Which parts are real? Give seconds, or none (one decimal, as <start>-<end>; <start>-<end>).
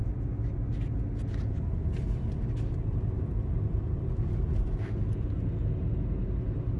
0.0-6.8